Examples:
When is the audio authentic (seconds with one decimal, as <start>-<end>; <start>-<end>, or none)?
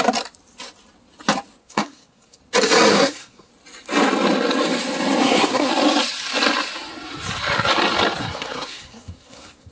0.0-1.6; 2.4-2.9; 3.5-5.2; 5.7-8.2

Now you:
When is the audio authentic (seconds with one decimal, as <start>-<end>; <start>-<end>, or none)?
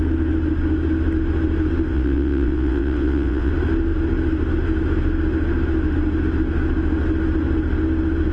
0.0-1.9; 3.5-8.3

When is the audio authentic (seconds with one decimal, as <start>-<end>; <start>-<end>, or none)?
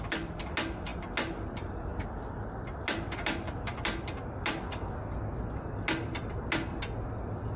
0.0-7.6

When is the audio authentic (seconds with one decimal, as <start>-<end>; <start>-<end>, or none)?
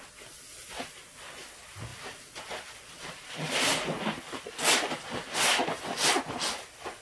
0.0-7.0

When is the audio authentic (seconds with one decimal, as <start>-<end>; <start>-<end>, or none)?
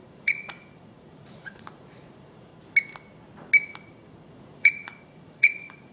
2.5-4.3